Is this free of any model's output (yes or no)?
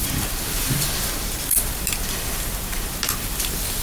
no